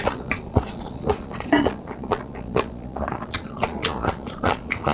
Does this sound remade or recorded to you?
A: remade